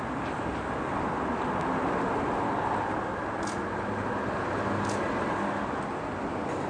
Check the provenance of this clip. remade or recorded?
recorded